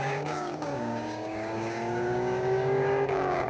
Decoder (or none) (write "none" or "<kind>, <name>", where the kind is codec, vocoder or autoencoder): codec, DAC